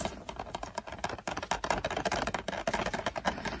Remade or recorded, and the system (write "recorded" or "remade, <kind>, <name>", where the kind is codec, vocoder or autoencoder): recorded